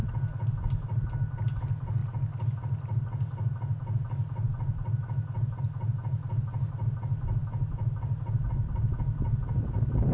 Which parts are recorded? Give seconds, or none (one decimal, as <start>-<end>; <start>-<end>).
0.0-10.1